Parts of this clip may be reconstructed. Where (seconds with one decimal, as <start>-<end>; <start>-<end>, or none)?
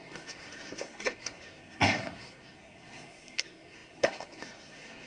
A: 0.0-5.1